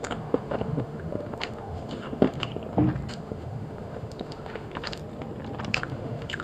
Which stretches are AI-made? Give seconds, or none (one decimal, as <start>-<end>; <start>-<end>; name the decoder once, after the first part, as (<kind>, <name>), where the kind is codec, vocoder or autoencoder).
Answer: 0.0-2.5 (autoencoder, DAC-VAE); 3.1-5.0; 5.7-6.4

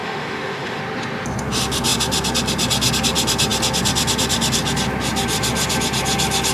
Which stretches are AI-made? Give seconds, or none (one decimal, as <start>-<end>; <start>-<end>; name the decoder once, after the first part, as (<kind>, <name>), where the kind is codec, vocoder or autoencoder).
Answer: 0.0-0.8 (autoencoder, DAC-VAE)